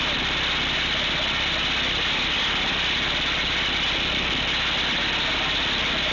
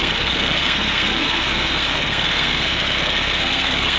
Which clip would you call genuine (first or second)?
first